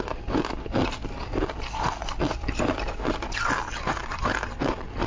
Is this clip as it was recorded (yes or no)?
yes